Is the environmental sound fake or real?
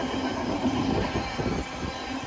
real